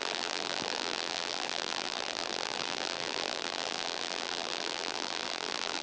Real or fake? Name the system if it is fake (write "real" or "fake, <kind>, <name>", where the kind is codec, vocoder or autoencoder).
fake, vocoder, BigVGAN v2